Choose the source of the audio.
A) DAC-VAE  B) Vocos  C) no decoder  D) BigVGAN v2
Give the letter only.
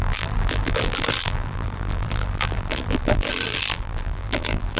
D